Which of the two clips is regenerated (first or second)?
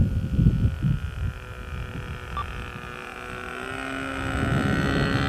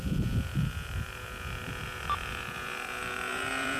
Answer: second